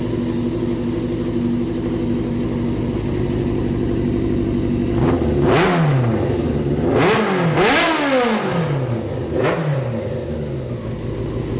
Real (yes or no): yes